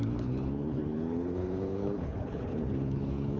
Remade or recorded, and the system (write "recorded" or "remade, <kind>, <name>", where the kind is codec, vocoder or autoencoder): remade, codec, HILCodec